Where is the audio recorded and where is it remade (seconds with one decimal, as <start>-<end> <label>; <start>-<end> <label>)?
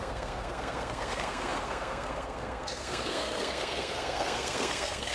0.0-5.1 remade